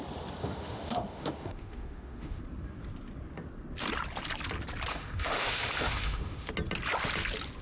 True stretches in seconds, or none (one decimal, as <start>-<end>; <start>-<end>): 0.0-0.4; 2.4-4.9; 6.5-7.6